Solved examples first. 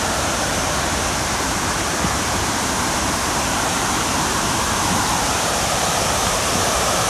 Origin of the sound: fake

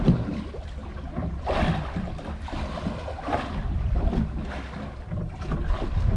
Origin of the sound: real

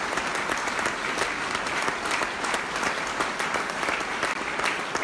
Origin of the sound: real